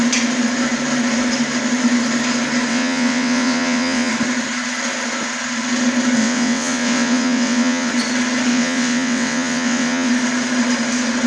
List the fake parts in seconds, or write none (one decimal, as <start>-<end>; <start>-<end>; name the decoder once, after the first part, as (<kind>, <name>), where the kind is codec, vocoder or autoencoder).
2.7-4.1 (vocoder, WaveNeXt); 6.2-7.9; 8.5-10.1